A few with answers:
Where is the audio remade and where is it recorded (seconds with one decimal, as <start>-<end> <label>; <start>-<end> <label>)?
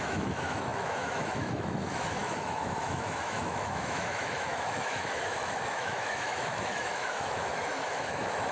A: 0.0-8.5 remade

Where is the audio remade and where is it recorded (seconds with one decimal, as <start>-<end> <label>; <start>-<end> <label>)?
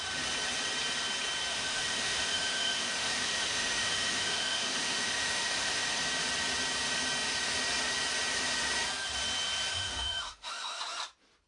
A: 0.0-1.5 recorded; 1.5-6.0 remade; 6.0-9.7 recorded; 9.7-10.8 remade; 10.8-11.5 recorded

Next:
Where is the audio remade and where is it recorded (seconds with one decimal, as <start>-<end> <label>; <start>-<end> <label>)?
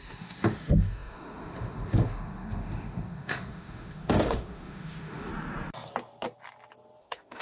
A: 0.0-5.3 remade; 5.3-7.0 recorded; 7.0-7.4 remade